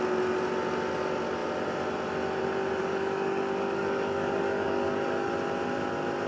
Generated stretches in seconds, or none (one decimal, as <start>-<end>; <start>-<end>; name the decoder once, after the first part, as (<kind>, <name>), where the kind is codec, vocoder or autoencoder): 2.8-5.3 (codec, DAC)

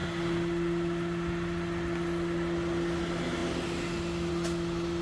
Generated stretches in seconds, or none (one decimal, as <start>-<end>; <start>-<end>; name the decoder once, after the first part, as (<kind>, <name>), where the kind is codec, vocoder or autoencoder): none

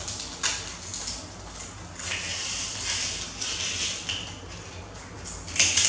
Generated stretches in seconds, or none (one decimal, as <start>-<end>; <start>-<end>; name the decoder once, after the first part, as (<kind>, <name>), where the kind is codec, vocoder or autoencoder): none

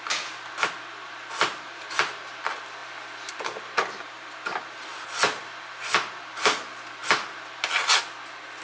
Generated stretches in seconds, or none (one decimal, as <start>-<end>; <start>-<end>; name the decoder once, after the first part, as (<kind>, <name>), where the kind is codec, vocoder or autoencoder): none

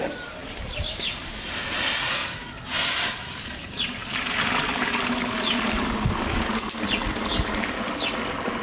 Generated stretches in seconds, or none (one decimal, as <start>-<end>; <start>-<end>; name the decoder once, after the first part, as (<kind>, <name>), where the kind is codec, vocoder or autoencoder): none

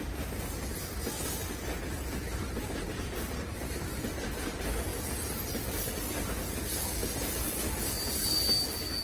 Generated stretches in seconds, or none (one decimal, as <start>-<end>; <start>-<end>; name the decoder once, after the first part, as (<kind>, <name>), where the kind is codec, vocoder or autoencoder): none

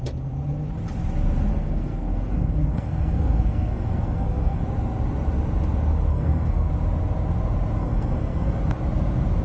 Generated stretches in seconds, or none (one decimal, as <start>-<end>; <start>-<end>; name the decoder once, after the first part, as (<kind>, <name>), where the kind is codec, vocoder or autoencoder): 1.5-4.6 (codec, SNAC); 6.1-6.7; 7.8-8.6

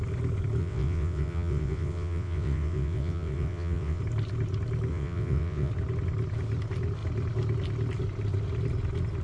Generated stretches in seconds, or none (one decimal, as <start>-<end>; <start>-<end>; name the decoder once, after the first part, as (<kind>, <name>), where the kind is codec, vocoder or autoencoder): 0.6-4.0 (vocoder, WaveNeXt); 4.9-5.7